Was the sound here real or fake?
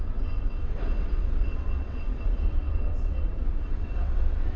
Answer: fake